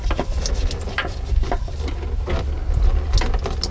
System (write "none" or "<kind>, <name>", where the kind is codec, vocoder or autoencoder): none